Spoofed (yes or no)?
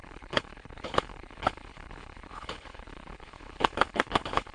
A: yes